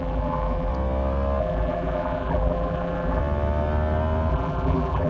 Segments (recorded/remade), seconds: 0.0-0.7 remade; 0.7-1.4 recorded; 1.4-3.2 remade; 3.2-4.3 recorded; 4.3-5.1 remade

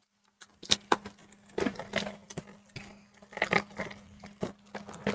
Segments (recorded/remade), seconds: 0.0-5.1 recorded

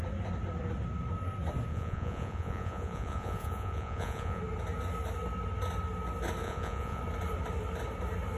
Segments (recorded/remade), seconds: 0.0-1.7 recorded; 1.7-4.4 remade; 4.4-6.4 recorded; 6.4-7.0 remade; 7.0-8.4 recorded

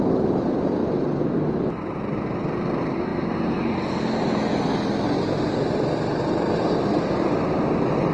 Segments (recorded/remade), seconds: 0.0-8.1 recorded

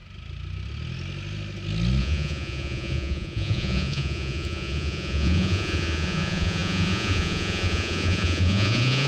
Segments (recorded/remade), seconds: 0.0-2.0 recorded; 2.0-9.1 remade

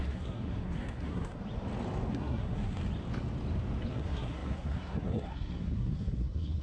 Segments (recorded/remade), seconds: 0.0-1.4 remade; 1.4-2.1 recorded; 2.1-2.8 remade; 2.8-3.9 recorded; 3.9-6.6 remade

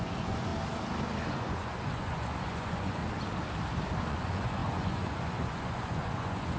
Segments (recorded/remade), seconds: 0.0-0.5 remade; 0.5-1.3 recorded; 1.3-3.0 remade; 3.0-4.0 recorded; 4.0-6.6 remade